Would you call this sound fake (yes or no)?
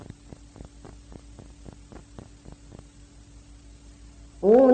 no